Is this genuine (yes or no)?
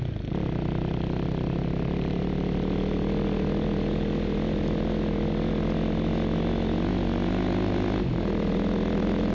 yes